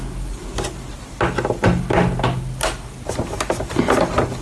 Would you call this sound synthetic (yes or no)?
no